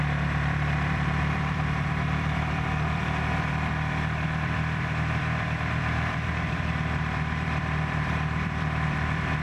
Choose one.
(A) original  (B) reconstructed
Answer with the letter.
B